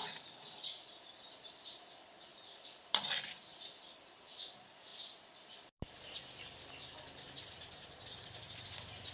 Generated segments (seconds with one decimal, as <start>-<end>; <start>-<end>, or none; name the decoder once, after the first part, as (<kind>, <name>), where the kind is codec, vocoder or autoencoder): 0.0-1.1 (vocoder, BigVGAN v2); 2.3-4.5; 4.9-6.4